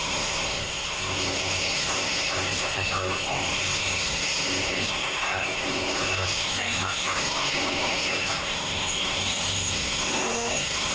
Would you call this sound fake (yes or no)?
yes